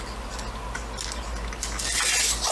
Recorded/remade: recorded